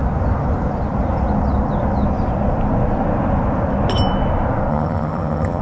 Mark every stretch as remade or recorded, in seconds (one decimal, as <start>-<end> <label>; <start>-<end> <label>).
0.0-4.7 recorded; 4.7-5.6 remade